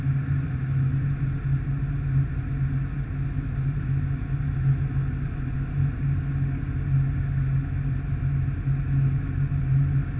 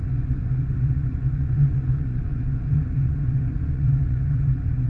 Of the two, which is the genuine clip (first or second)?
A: first